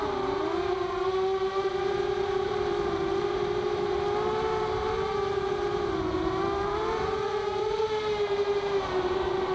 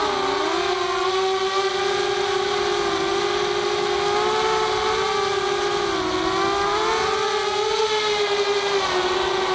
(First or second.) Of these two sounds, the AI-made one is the first